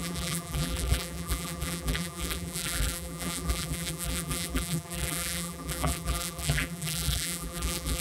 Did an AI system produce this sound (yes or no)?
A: yes